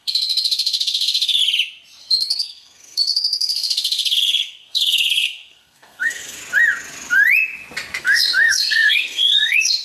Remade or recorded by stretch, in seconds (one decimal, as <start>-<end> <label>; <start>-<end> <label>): 0.0-1.4 remade; 1.4-2.0 recorded; 2.0-6.4 remade; 6.4-8.0 recorded; 8.0-9.8 remade